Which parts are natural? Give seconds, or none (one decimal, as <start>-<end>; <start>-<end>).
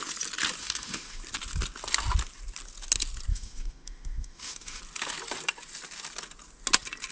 0.0-0.6; 1.2-3.3; 4.8-7.1